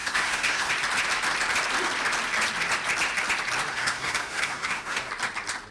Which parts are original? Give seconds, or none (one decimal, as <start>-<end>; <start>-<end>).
0.7-3.7; 5.1-5.7